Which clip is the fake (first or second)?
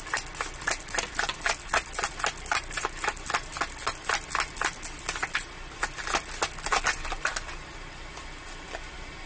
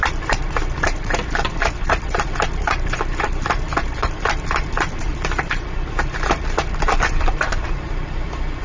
second